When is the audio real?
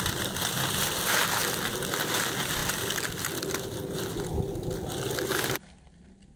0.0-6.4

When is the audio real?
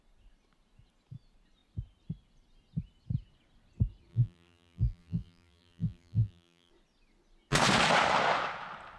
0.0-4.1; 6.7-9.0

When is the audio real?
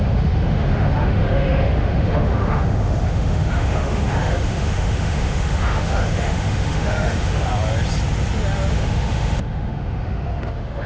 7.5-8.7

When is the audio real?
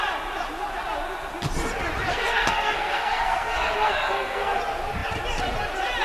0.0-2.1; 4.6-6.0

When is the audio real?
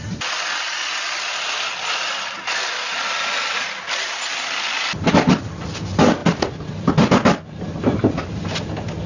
0.0-9.1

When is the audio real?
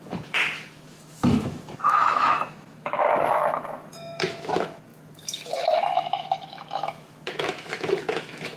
none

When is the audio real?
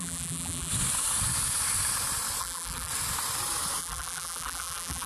0.7-2.4; 2.9-3.8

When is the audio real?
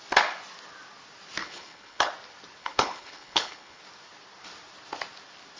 0.0-1.4; 2.1-2.6; 3.8-5.6